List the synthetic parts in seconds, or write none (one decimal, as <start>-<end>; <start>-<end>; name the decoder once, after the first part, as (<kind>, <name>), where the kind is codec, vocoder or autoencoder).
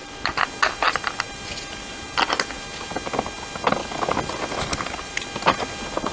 none